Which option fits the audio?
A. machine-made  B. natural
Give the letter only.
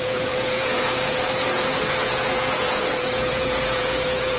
A